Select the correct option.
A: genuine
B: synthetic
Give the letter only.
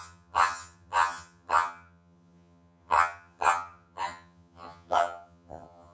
B